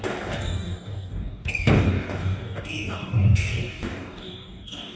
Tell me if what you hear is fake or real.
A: fake